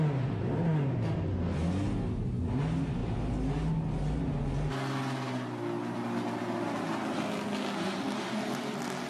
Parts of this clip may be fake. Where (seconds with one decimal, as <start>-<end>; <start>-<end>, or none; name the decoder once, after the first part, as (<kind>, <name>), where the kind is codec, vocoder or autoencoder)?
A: none